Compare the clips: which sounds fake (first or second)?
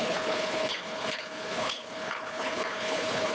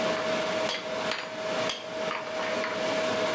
first